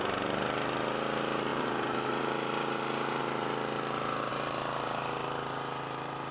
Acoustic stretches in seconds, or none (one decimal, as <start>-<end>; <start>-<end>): 0.0-1.5; 3.2-4.3